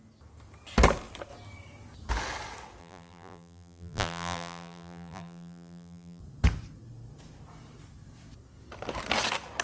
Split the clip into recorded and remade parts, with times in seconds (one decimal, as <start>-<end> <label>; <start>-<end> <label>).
0.0-2.8 recorded; 2.8-6.2 remade; 6.2-9.6 recorded